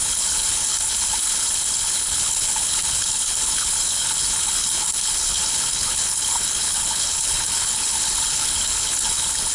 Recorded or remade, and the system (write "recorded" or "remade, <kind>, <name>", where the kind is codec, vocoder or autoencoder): remade, codec, HILCodec